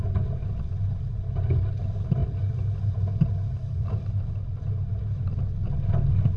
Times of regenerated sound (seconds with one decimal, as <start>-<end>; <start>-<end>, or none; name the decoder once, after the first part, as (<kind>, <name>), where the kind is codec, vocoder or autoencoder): none